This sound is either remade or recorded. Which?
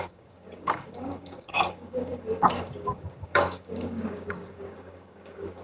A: remade